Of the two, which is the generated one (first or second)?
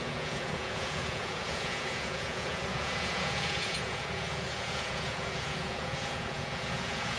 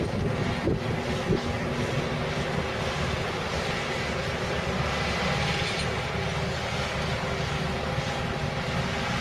first